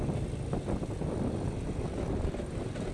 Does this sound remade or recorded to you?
recorded